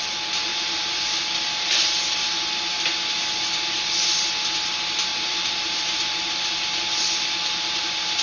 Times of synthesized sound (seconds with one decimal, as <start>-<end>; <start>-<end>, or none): 0.5-1.2; 5.1-6.0